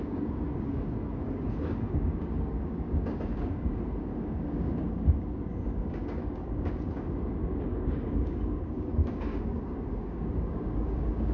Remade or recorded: remade